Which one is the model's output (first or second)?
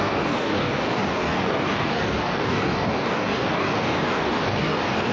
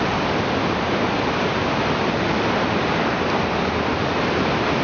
first